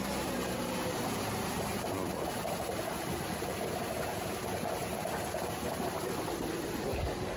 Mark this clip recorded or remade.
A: remade